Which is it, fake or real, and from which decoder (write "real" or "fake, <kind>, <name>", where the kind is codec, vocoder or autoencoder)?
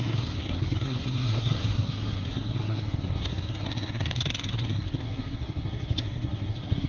fake, codec, SNAC